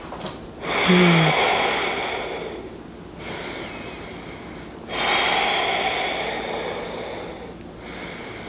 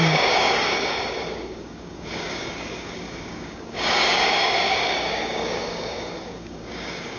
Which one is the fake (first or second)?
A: second